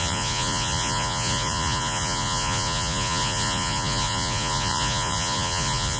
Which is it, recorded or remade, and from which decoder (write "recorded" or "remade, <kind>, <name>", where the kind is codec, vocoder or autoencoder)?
remade, vocoder, Vocos